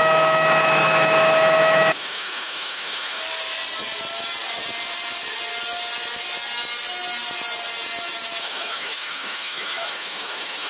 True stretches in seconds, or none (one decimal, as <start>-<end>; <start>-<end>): 3.2-8.4